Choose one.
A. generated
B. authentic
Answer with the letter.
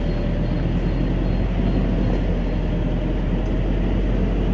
B